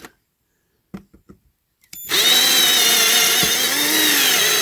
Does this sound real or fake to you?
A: real